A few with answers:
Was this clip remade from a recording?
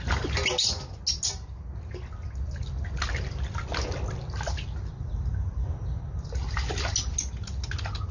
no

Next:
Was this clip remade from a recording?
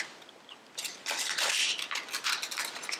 no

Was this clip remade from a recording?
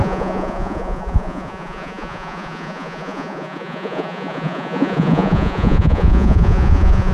yes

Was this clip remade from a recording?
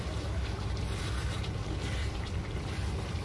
yes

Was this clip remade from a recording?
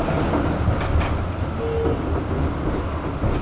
no